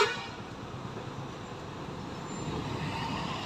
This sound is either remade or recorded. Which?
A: recorded